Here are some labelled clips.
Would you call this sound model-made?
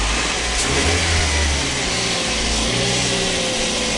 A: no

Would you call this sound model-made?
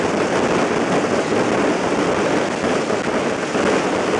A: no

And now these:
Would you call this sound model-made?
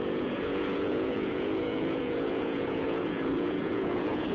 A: yes